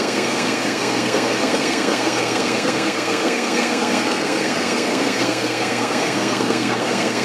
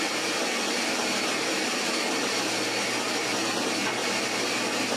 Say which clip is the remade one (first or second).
first